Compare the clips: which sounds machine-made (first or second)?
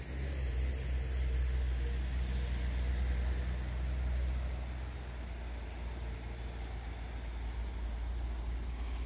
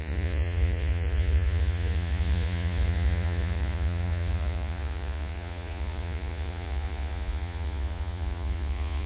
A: second